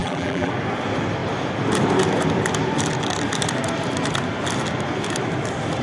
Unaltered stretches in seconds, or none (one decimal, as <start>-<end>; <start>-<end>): 0.5-5.8